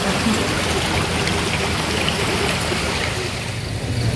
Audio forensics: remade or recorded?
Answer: recorded